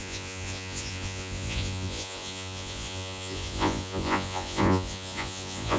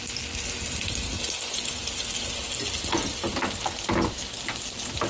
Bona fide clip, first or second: second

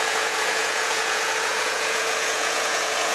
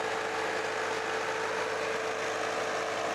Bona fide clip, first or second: second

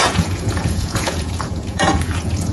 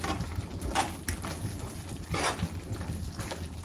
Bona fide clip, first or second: second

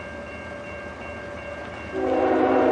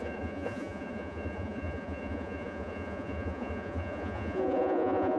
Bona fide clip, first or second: first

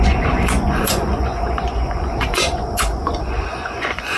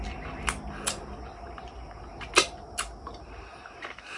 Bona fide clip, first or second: second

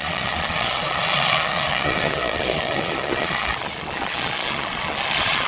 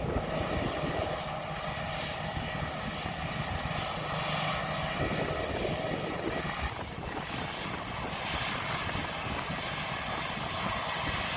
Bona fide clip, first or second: second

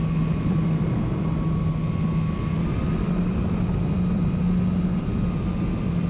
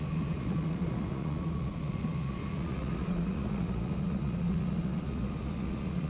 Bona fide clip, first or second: first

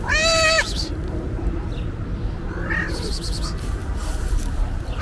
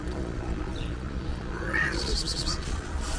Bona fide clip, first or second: first